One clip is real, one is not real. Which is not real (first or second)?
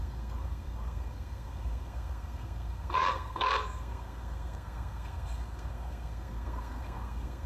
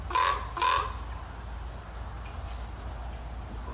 first